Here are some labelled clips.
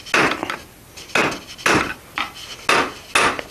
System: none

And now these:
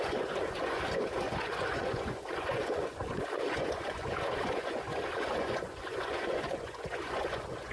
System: vocoder, Vocos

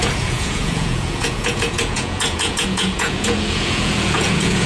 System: vocoder, Vocos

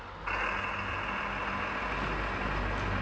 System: none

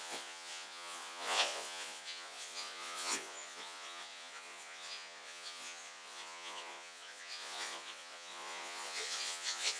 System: vocoder, Vocos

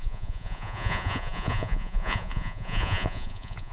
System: vocoder, Vocos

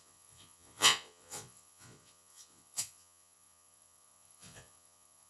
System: vocoder, Vocos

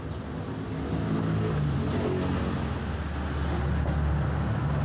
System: none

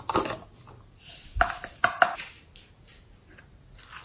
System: none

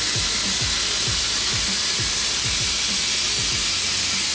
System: none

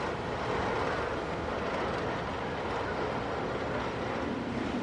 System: none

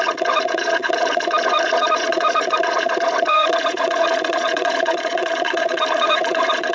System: vocoder, Vocos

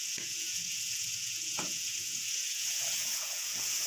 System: vocoder, Vocos